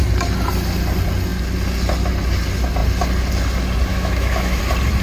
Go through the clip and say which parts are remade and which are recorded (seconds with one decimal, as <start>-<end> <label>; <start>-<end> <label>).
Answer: 0.0-3.9 recorded; 3.9-4.6 remade; 4.6-5.0 recorded